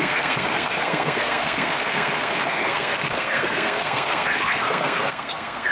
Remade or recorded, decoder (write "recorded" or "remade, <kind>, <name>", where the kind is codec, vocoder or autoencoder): remade, codec, SNAC